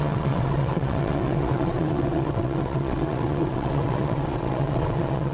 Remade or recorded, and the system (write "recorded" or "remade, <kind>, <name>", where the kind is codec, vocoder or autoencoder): remade, vocoder, WaveNeXt